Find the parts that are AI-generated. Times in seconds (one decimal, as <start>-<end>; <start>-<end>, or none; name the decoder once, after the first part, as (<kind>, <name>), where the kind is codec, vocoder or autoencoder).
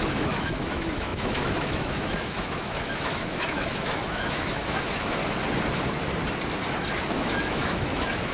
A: 0.0-5.2 (autoencoder, DAC-VAE); 7.0-8.3